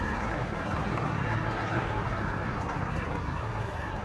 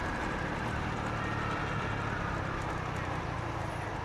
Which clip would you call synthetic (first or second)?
first